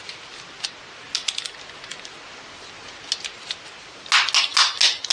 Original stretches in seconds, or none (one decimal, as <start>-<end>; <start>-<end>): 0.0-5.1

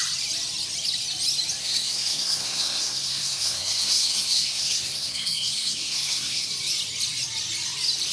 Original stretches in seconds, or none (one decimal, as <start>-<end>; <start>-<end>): 0.0-1.6; 6.5-8.1

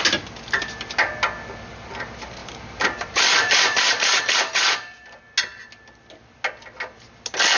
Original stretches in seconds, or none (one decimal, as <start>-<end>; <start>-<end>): 0.0-2.4; 5.2-7.6

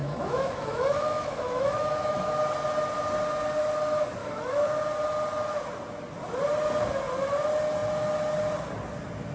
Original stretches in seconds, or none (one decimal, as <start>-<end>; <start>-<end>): 2.4-4.2; 4.8-9.3